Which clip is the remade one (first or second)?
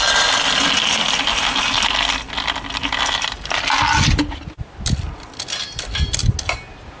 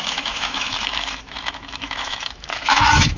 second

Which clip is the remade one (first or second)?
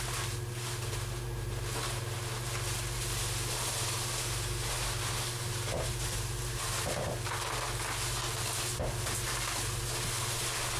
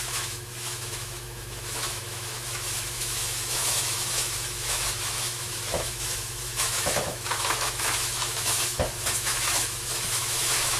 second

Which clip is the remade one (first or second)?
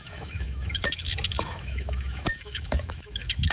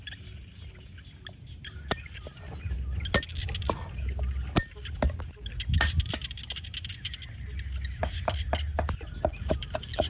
first